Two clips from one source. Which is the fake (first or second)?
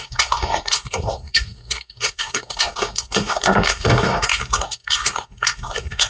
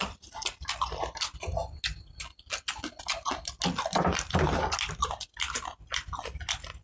first